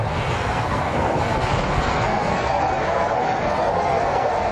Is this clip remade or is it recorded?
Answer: remade